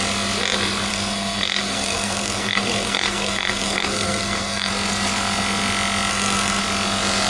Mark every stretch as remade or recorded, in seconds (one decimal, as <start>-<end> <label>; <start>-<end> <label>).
0.0-0.9 recorded; 0.9-4.7 remade; 4.7-6.1 recorded; 6.1-6.6 remade; 6.6-7.3 recorded